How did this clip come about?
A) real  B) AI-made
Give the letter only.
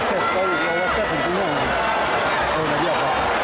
A